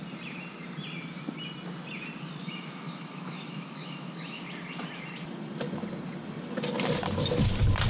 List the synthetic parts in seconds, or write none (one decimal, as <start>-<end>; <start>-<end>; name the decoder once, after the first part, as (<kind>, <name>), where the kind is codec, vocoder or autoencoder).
2.4-4.4 (autoencoder, DAC-VAE)

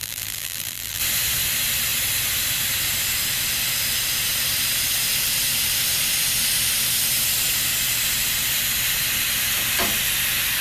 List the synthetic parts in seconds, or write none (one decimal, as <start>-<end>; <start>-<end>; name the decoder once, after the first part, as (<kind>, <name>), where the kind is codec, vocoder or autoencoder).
0.0-1.0 (vocoder, BigVGAN v2)

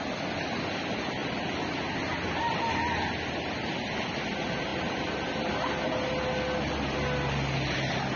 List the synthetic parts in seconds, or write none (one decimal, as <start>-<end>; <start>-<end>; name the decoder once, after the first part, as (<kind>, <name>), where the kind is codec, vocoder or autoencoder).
none

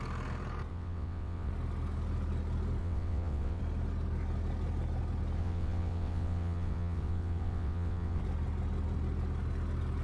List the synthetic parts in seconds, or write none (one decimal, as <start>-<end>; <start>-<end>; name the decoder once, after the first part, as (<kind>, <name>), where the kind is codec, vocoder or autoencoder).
0.7-1.5 (vocoder, WaveNeXt); 2.8-3.6; 5.4-8.2

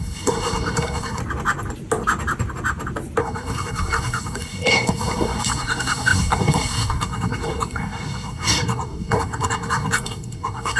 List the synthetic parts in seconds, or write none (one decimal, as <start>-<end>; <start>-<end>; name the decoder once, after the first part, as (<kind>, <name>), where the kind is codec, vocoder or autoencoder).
0.0-1.2 (codec, SNAC); 3.2-10.8

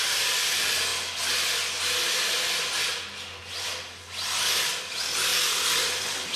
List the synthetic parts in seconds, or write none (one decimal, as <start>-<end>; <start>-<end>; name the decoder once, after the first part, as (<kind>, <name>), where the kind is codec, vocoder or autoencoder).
none